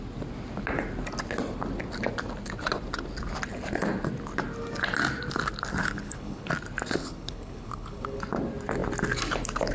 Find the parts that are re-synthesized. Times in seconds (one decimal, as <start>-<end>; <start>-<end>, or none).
5.8-6.5; 7.0-8.2

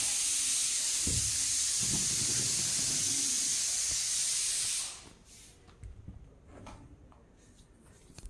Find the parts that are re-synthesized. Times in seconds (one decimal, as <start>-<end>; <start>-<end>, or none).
none